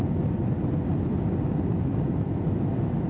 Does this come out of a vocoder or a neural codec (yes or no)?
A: no